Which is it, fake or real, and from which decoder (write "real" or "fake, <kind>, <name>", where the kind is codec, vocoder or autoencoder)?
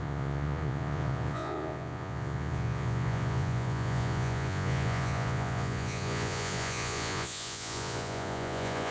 fake, vocoder, Vocos